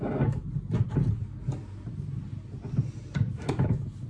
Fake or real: real